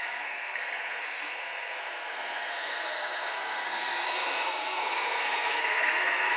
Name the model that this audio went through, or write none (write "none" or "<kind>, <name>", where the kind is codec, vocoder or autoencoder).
codec, SNAC